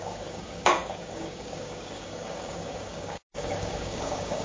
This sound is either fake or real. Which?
fake